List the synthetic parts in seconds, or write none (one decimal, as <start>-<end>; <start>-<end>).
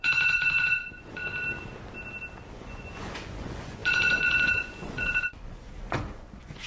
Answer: 0.0-1.2; 2.5-6.7